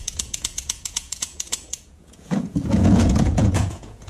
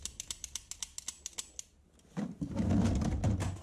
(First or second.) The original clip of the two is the second